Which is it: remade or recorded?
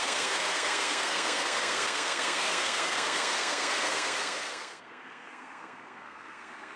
remade